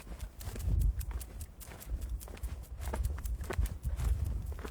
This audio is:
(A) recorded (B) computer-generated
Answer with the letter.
B